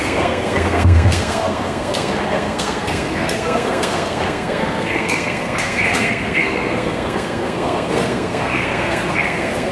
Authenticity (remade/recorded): remade